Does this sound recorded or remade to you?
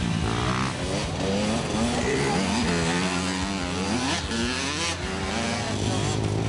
recorded